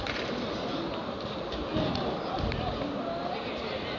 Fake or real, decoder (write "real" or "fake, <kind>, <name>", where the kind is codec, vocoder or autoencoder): real